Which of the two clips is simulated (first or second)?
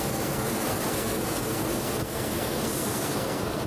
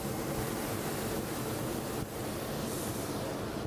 first